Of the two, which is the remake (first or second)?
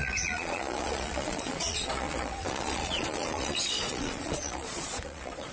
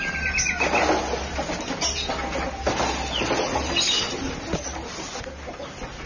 first